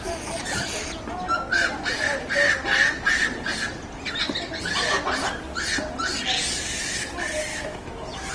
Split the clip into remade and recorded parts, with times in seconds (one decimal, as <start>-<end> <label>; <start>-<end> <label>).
0.0-7.5 recorded; 7.5-8.3 remade